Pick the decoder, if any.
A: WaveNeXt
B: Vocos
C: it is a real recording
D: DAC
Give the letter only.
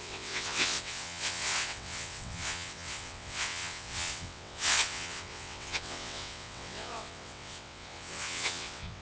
A